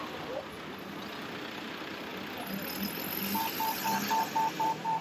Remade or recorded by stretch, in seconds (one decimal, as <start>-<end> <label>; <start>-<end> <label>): 0.0-2.1 remade; 2.1-3.2 recorded; 3.2-3.9 remade; 3.9-4.5 recorded; 4.5-5.0 remade